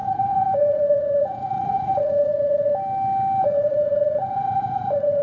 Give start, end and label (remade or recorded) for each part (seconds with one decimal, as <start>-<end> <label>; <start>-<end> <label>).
0.0-2.7 remade; 2.7-3.4 recorded; 3.4-5.2 remade

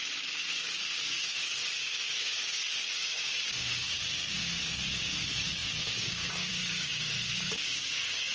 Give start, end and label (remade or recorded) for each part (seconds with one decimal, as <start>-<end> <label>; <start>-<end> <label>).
0.0-8.3 remade

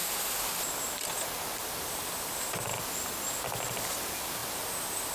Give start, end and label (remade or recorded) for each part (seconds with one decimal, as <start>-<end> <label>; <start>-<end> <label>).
0.0-1.6 recorded; 1.6-3.3 remade; 3.3-4.4 recorded; 4.4-5.1 remade

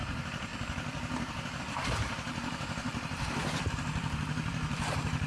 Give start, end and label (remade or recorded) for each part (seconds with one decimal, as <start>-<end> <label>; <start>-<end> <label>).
0.0-0.5 remade; 0.5-1.6 recorded; 1.6-5.3 remade

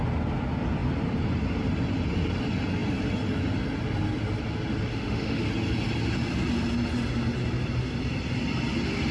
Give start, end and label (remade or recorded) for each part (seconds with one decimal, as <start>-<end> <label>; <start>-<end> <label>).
0.0-4.9 recorded; 4.9-5.5 remade; 5.5-9.1 recorded